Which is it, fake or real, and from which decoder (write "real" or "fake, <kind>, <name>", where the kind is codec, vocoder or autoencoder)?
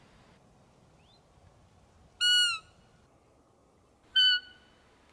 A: real